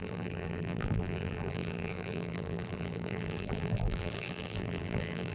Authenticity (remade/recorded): remade